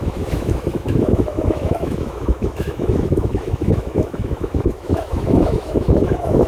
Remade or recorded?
remade